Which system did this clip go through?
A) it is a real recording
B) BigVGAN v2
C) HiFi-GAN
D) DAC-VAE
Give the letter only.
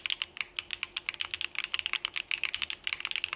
A